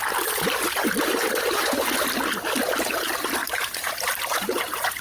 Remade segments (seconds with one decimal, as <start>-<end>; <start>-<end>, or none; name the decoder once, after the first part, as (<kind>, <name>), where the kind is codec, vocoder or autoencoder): 3.4-3.9 (vocoder, BigVGAN v2); 4.3-5.0